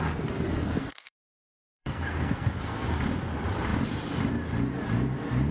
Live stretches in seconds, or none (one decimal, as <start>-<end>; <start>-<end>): 0.0-0.6; 3.0-5.5